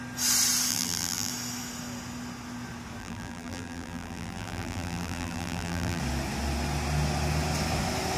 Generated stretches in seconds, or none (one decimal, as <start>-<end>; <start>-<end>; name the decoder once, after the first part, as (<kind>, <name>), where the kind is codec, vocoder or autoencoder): 0.7-1.3 (vocoder, BigVGAN v2); 3.0-6.0